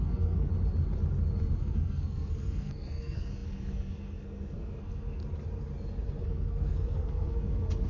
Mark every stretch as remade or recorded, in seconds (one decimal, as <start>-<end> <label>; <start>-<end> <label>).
0.0-0.5 remade; 0.5-1.6 recorded; 1.6-5.2 remade; 5.2-6.2 recorded; 6.2-7.9 remade